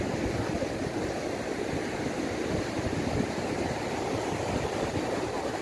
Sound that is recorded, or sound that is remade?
remade